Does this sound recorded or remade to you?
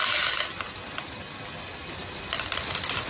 recorded